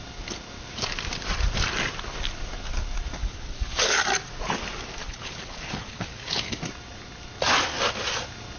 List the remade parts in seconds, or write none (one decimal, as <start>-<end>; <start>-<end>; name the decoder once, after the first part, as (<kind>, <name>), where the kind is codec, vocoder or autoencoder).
3.2-4.0 (codec, HILCodec); 5.0-6.6